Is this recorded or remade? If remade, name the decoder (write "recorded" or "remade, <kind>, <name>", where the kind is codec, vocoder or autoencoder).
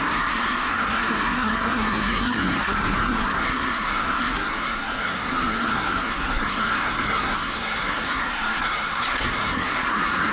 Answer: remade, codec, SNAC